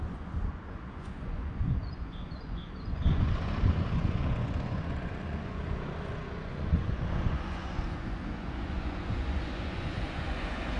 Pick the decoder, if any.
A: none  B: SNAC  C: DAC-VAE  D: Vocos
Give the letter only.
D